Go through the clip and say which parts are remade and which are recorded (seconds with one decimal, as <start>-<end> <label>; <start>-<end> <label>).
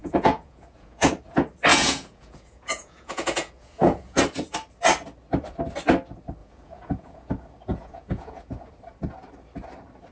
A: 0.0-1.1 remade; 1.1-1.7 recorded; 1.7-4.2 remade; 4.2-6.4 recorded; 6.4-7.3 remade; 7.3-7.7 recorded; 7.7-8.7 remade; 8.7-10.1 recorded